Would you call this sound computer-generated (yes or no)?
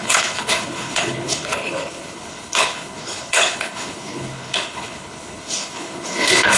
yes